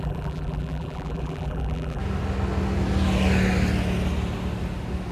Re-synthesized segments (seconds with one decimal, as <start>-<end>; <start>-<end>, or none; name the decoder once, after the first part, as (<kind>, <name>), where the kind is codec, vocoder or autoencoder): 0.0-2.0 (vocoder, BigVGAN v2)